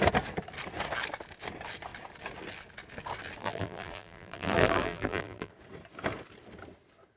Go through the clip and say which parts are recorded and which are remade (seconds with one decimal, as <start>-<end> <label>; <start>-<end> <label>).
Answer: 0.0-3.4 recorded; 3.4-5.5 remade; 5.5-7.2 recorded